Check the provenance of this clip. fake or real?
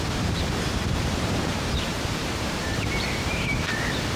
fake